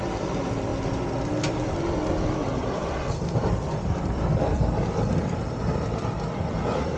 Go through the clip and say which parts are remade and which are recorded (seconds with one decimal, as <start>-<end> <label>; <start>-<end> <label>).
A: 0.0-0.7 remade; 0.7-1.8 recorded; 1.8-7.0 remade